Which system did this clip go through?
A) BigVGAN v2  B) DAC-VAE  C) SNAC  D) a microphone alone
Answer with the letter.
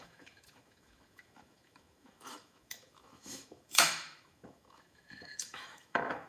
B